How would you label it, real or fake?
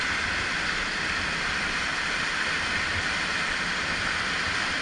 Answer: real